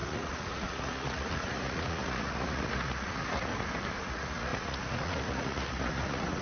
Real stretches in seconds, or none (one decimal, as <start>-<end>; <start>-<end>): 3.5-4.0